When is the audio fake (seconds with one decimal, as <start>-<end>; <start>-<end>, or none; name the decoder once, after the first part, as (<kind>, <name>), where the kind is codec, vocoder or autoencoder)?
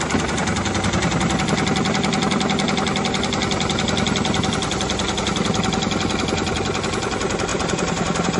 7.5-8.4 (vocoder, BigVGAN v2)